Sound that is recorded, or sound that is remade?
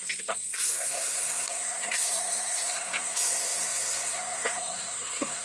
remade